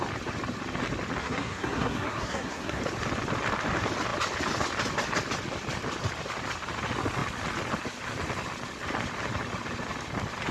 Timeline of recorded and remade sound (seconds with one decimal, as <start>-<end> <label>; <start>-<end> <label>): 0.0-1.2 recorded; 1.2-2.8 remade; 2.8-10.5 recorded